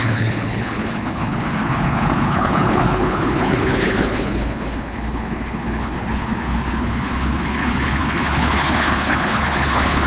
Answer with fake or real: fake